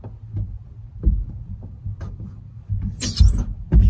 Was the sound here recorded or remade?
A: recorded